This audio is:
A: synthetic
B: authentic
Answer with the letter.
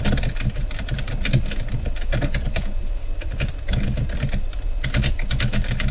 B